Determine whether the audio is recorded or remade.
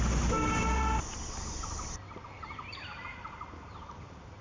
recorded